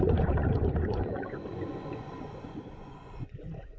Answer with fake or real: fake